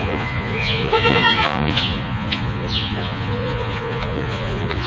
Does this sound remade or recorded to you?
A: remade